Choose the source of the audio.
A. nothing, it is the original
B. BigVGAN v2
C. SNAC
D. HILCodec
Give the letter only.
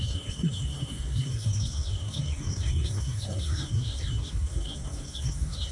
C